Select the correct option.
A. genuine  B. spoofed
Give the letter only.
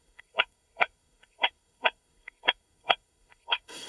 B